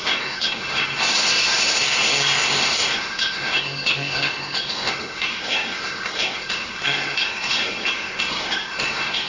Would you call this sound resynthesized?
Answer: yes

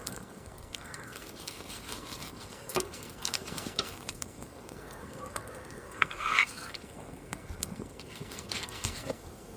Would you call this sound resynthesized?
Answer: yes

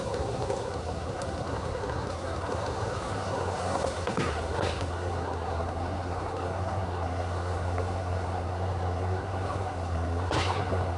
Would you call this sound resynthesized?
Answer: yes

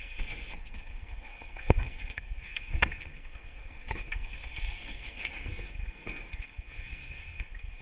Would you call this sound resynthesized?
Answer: yes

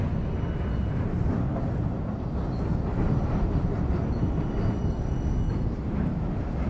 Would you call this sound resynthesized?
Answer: no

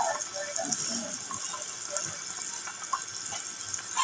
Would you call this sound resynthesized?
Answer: no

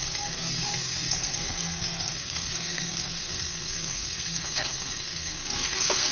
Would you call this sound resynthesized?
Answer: yes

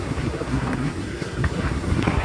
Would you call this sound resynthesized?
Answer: yes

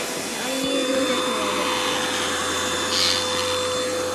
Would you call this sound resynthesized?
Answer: no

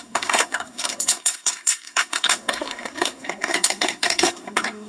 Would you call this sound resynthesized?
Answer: yes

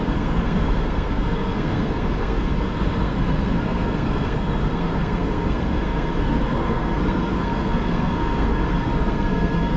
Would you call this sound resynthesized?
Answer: yes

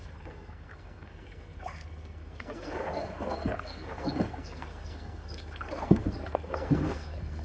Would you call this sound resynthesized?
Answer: yes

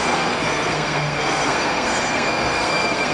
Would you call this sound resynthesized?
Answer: yes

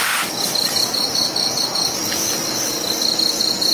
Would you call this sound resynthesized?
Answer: no